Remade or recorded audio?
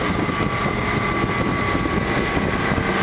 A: recorded